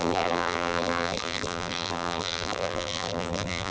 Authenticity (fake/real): fake